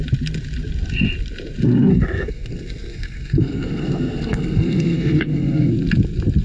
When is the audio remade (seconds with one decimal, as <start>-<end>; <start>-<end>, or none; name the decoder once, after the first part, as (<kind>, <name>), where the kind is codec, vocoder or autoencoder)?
1.9-5.7 (codec, SNAC)